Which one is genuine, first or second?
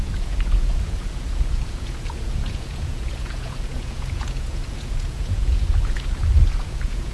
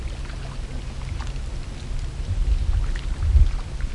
second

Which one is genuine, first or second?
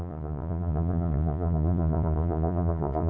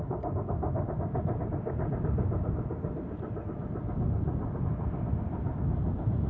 second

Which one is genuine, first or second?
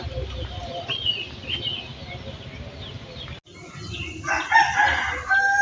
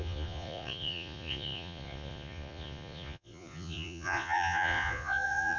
first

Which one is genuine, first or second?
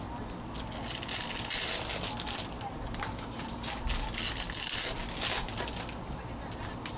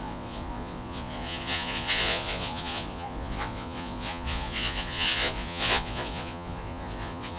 first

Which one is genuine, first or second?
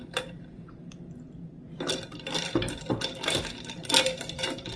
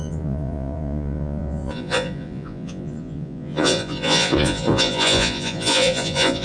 first